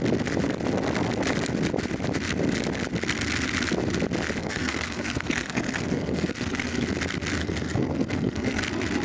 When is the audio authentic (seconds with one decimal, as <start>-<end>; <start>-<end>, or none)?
0.0-4.4; 6.8-7.4; 8.6-9.0